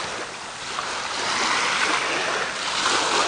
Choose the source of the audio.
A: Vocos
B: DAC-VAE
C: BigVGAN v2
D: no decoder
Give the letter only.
D